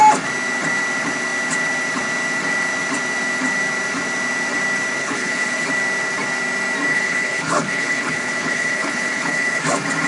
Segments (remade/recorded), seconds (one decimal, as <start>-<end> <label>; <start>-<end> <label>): 0.0-5.0 recorded; 5.0-5.7 remade; 5.7-6.9 recorded; 6.9-9.6 remade; 9.6-10.1 recorded